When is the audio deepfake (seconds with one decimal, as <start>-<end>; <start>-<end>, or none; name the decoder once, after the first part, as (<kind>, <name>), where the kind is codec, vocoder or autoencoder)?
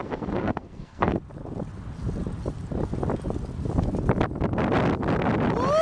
0.0-1.2 (codec, SNAC)